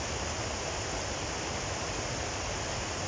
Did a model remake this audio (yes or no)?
no